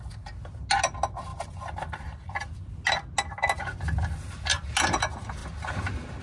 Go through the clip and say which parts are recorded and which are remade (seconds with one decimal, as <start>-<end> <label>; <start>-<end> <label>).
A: 0.0-1.3 recorded; 1.3-2.3 remade; 2.3-6.2 recorded